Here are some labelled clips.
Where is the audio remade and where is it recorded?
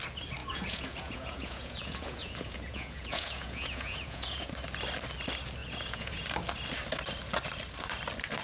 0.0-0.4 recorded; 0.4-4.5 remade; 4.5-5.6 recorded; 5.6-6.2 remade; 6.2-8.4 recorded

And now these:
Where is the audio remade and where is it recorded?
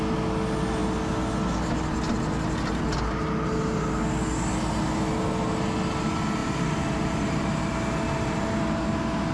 0.0-6.4 recorded; 6.4-8.6 remade; 8.6-9.3 recorded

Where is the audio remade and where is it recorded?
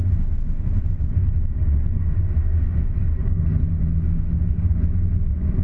0.0-0.8 remade; 0.8-2.0 recorded; 2.0-2.9 remade; 2.9-3.6 recorded; 3.6-4.6 remade; 4.6-5.6 recorded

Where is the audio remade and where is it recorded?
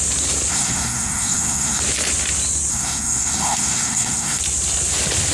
0.0-0.5 recorded; 0.5-1.8 remade; 1.8-2.7 recorded; 2.7-4.4 remade; 4.4-5.3 recorded